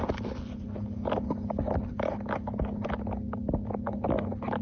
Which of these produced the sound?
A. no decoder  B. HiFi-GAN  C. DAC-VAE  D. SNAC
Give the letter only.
A